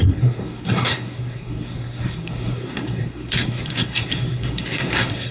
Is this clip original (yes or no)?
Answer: no